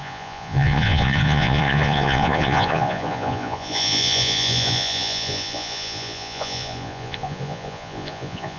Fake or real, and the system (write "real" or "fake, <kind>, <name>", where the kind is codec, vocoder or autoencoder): fake, vocoder, Vocos